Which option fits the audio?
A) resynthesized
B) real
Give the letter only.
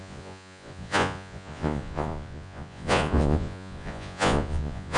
A